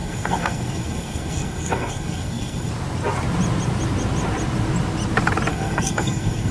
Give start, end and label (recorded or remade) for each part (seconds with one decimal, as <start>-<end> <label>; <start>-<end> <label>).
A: 0.0-2.7 remade; 2.7-5.5 recorded; 5.5-6.5 remade